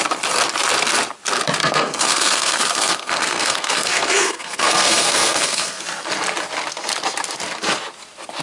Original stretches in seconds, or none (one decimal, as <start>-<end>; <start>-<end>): 0.0-1.6; 5.8-8.4